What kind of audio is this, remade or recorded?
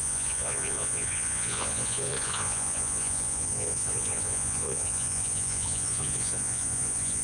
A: remade